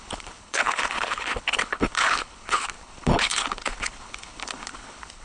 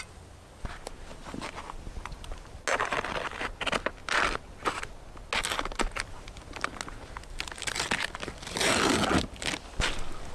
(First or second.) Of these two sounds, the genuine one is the second